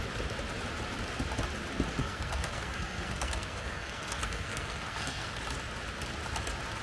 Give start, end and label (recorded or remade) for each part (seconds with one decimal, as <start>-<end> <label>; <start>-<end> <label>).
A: 0.0-2.0 recorded; 2.0-5.4 remade; 5.4-6.8 recorded